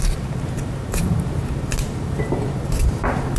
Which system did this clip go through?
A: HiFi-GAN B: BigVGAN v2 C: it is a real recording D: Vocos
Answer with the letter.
B